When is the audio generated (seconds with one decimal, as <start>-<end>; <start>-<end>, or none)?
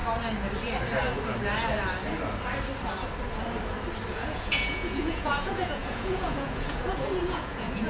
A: 4.1-7.9